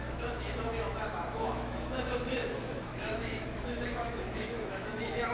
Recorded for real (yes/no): no